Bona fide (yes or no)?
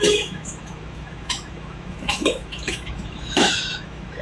no